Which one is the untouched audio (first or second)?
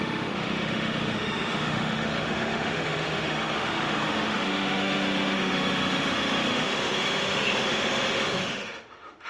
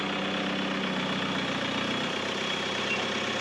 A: second